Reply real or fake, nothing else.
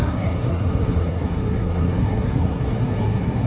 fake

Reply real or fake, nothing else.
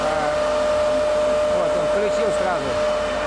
real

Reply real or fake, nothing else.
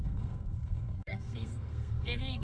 fake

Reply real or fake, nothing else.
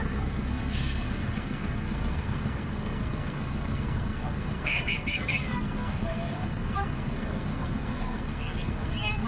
fake